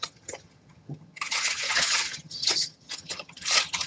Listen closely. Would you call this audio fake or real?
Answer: fake